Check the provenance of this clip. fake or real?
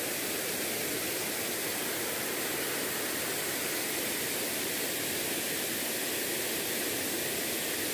real